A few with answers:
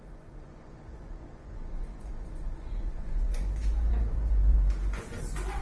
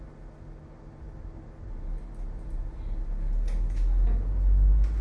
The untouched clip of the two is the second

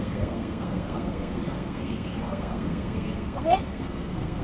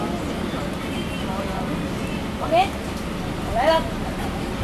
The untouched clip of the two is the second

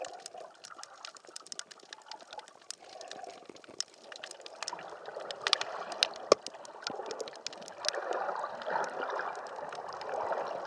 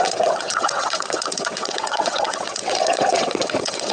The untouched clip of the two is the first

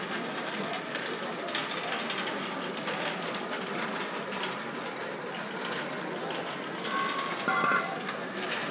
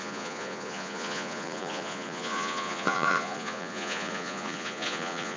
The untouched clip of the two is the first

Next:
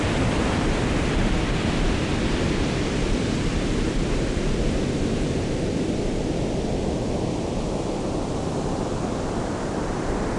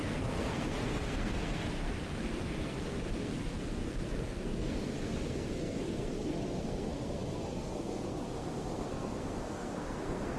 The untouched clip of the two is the first